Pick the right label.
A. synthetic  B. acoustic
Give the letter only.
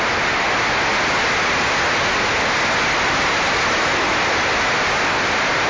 B